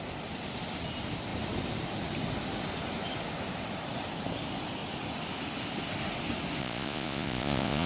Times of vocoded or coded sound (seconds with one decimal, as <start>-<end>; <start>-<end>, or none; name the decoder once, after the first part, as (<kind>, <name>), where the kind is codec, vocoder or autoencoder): 6.6-7.9 (vocoder, Vocos)

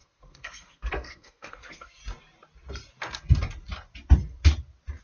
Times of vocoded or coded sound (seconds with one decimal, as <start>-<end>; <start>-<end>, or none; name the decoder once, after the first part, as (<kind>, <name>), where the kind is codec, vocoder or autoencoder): 0.0-2.0 (codec, SNAC)